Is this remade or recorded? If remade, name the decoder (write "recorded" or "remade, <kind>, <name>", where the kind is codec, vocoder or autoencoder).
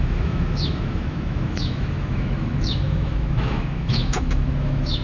remade, autoencoder, DAC-VAE